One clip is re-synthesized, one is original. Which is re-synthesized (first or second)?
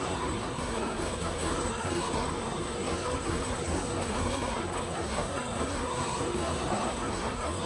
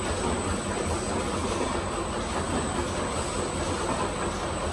first